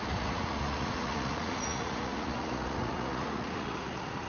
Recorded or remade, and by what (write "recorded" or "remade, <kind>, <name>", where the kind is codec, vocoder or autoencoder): remade, vocoder, Vocos